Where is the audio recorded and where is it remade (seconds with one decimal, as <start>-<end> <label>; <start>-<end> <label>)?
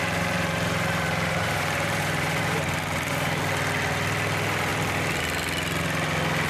0.0-3.4 remade; 3.4-6.5 recorded